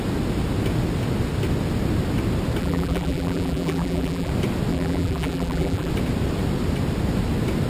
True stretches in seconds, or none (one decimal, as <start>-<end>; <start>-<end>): 0.0-2.6; 4.3-4.7; 5.9-7.7